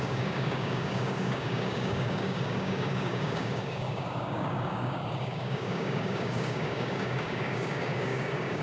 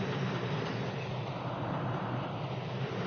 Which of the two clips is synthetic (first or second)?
first